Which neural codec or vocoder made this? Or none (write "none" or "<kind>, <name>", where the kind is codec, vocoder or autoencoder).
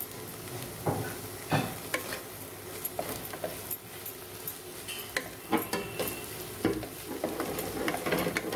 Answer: none